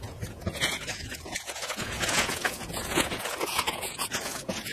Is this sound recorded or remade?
remade